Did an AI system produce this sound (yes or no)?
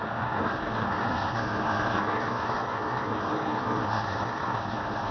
yes